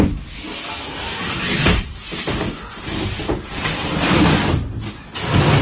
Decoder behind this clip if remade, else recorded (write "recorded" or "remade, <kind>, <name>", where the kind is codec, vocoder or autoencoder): recorded